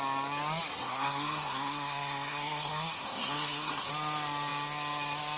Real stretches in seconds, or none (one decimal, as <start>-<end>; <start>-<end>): 0.0-0.7; 3.9-5.4